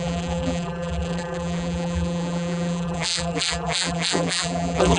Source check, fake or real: fake